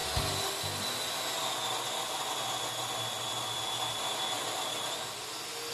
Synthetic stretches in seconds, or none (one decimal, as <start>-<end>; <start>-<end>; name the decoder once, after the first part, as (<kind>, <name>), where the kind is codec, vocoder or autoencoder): none